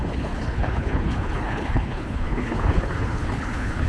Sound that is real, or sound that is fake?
fake